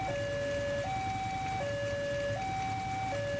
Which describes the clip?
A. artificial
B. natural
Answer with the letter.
B